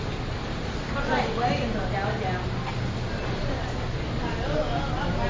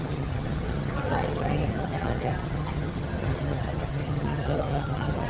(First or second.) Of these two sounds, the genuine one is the first